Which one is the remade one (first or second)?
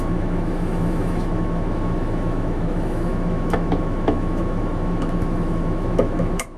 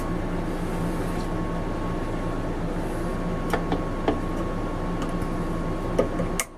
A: first